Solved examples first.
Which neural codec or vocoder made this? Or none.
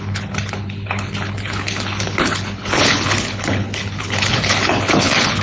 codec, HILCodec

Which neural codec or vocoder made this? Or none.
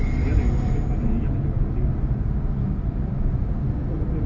none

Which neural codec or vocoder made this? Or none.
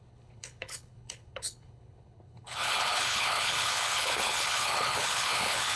codec, HILCodec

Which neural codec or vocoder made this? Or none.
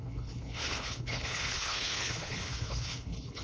codec, HILCodec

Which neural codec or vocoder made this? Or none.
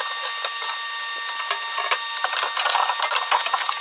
none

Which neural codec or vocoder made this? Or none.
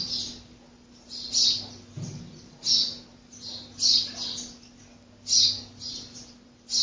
none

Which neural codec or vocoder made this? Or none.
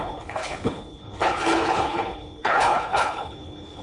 codec, HILCodec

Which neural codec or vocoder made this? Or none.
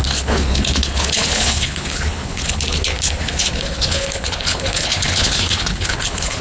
codec, HILCodec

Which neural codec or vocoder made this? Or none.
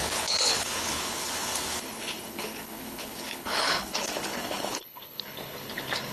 codec, HILCodec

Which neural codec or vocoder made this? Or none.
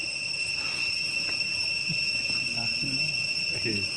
none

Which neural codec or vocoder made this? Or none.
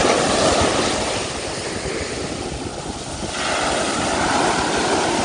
none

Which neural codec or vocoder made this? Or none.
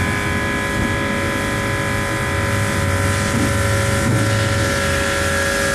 none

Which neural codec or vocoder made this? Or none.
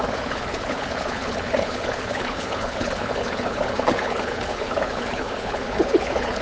codec, HILCodec